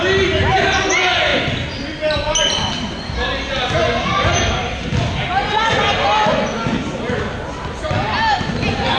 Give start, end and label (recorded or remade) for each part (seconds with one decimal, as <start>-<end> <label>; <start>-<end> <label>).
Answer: 0.0-9.0 recorded